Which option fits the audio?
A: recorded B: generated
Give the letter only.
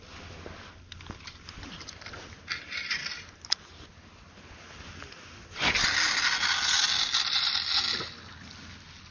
A